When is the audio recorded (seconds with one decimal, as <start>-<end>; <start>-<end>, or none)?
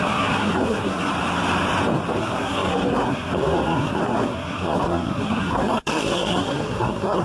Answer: 1.1-2.2